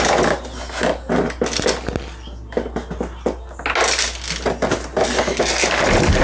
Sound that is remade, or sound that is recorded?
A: recorded